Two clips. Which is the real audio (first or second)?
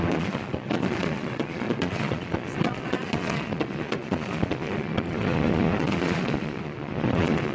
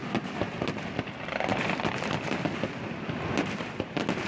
second